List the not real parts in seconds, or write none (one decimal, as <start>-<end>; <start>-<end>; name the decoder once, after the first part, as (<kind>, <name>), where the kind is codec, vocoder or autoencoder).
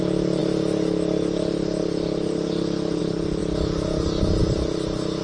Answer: none